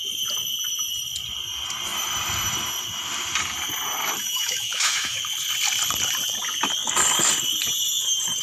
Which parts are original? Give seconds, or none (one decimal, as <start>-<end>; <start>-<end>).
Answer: 0.0-4.2; 5.2-8.4